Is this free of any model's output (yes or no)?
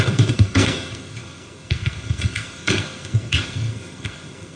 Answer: no